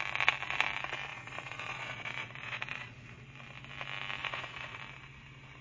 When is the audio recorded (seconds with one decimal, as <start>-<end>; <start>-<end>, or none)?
0.0-1.1; 3.2-4.2; 4.8-5.6